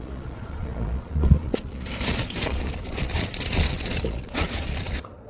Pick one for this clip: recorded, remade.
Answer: remade